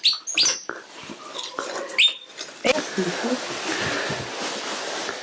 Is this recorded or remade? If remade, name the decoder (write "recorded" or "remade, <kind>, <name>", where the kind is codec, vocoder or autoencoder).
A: recorded